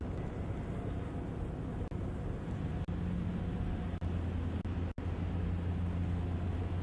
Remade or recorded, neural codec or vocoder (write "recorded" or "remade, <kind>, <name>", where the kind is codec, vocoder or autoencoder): recorded